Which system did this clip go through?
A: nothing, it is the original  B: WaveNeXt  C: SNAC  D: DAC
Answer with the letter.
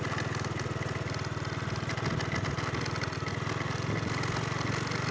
A